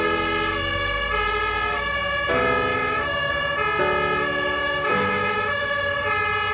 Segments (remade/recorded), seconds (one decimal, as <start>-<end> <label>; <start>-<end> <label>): 0.0-2.7 recorded; 2.7-3.3 remade; 3.3-4.6 recorded; 4.6-5.9 remade; 5.9-6.5 recorded